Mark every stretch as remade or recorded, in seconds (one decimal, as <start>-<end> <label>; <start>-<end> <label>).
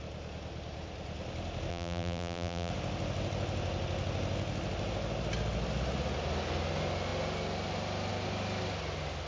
0.0-1.7 recorded; 1.7-2.7 remade; 2.7-9.3 recorded